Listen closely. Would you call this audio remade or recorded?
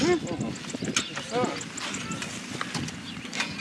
recorded